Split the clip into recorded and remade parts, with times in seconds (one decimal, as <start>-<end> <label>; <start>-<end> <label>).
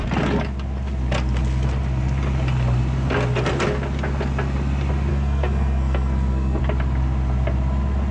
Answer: 0.0-5.1 recorded; 5.1-6.6 remade; 6.6-8.1 recorded